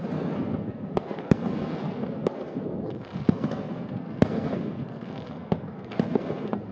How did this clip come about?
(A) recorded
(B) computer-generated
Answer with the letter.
B